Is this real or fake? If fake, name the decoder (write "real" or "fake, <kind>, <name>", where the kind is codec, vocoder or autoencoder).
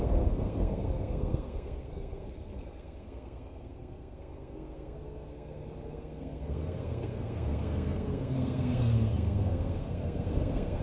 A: fake, codec, SNAC